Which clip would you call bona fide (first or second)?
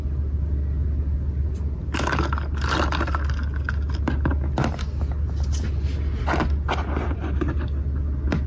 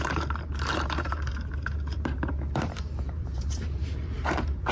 first